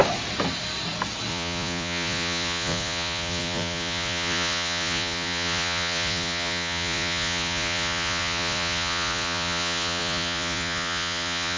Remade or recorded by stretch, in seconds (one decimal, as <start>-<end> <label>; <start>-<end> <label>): 0.0-1.3 recorded; 1.3-11.6 remade